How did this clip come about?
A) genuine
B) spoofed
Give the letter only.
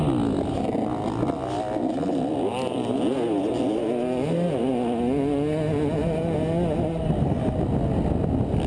A